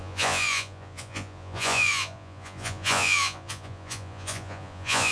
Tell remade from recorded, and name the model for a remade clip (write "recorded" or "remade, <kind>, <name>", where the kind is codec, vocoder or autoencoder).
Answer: remade, vocoder, Vocos